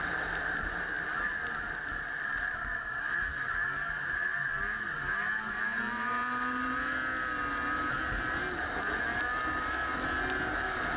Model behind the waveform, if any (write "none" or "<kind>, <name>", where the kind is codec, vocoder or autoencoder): none